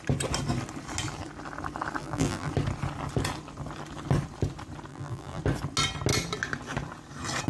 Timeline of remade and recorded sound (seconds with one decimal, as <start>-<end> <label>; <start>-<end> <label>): 0.0-2.0 recorded; 2.0-2.5 remade; 2.5-4.9 recorded; 4.9-5.4 remade; 5.4-7.5 recorded